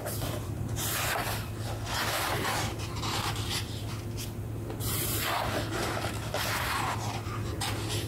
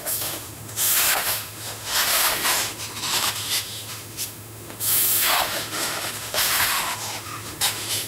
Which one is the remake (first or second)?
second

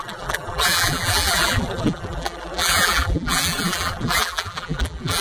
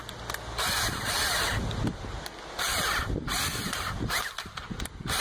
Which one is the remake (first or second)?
first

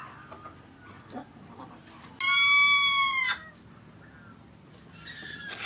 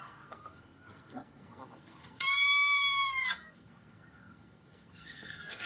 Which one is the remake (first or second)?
second